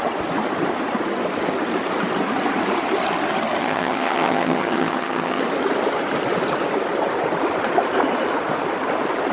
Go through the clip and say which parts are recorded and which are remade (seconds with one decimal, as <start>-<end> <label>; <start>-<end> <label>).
0.0-3.6 recorded; 3.6-5.4 remade; 5.4-9.3 recorded